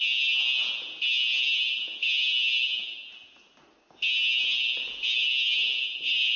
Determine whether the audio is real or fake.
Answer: real